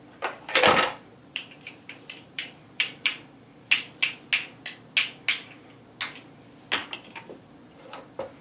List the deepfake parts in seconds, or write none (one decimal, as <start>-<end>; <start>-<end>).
1.1-3.7; 6.8-7.5